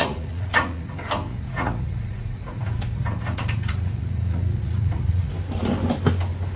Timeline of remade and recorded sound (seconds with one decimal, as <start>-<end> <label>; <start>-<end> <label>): 0.0-0.9 remade; 0.9-1.3 recorded; 1.3-5.3 remade; 5.3-6.6 recorded